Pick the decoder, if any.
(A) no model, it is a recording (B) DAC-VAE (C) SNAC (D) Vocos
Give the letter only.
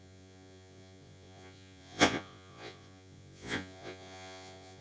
D